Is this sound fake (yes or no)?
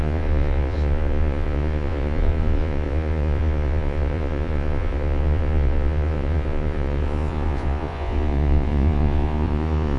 yes